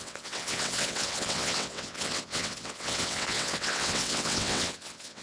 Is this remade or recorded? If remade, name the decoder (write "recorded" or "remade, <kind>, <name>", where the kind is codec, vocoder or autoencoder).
remade, vocoder, WaveNeXt